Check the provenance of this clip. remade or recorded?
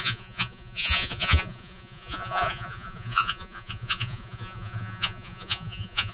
remade